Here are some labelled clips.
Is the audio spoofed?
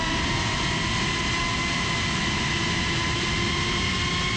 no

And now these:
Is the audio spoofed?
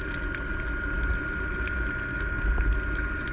no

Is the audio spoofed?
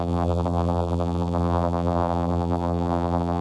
yes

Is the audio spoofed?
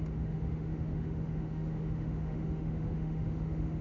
yes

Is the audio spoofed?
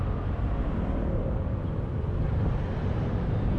yes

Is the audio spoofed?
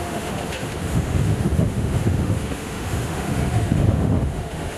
yes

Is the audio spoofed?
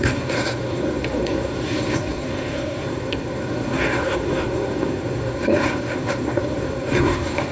yes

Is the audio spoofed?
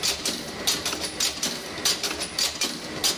no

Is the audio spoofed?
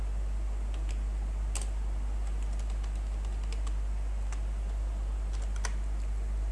no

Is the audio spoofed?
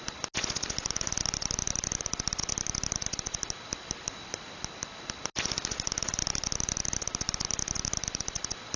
no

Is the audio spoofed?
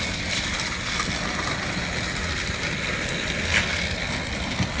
no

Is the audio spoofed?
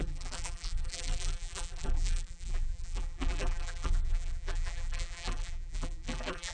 yes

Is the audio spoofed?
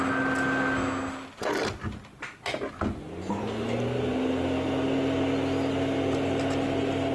no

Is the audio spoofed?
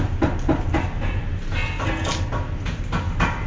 no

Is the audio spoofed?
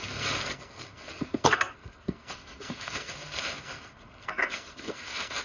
yes